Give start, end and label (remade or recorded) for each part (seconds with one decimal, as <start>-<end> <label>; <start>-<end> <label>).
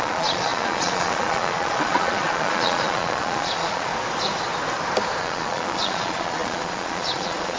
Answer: 0.0-3.9 remade; 3.9-5.2 recorded; 5.2-7.6 remade